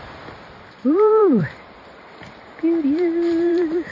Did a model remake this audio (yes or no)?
yes